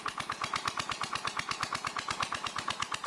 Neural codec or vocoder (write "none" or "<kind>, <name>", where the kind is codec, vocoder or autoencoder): vocoder, BigVGAN v2